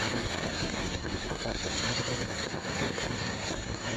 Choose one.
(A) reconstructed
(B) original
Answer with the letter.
A